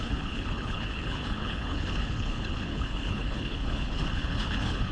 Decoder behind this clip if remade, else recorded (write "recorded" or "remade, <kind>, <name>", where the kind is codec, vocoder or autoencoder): remade, codec, HILCodec